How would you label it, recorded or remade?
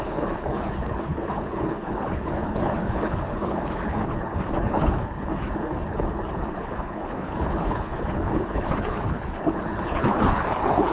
remade